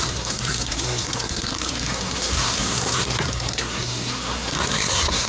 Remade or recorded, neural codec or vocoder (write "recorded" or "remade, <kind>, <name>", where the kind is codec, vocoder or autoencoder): remade, codec, SNAC